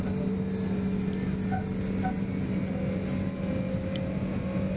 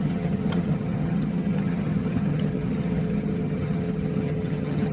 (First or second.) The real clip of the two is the first